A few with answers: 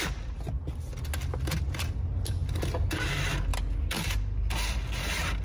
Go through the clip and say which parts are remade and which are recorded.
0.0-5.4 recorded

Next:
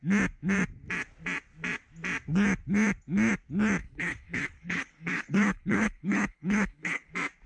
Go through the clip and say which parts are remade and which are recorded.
0.0-3.8 recorded; 3.8-7.1 remade; 7.1-7.5 recorded

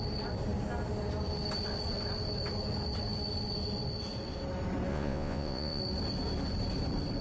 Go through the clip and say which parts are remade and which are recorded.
0.0-4.9 recorded; 4.9-5.8 remade; 5.8-7.2 recorded

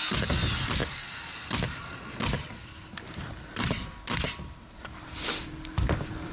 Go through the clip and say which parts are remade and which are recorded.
0.0-2.6 recorded; 2.6-6.3 remade

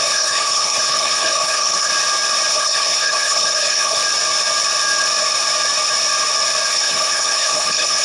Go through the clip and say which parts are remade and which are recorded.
0.0-1.9 remade; 1.9-2.5 recorded; 2.5-4.0 remade; 4.0-6.7 recorded; 6.7-8.0 remade